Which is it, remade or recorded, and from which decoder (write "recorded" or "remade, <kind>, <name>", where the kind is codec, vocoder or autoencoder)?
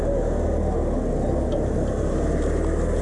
recorded